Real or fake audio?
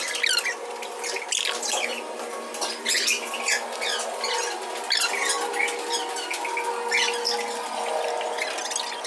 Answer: real